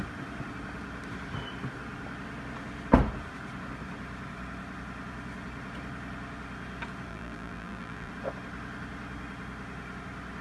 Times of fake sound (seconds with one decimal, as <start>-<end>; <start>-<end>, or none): 7.1-8.1